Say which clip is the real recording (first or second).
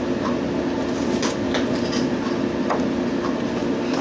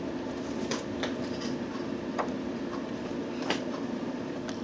first